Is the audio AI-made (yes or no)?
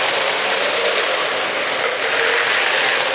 no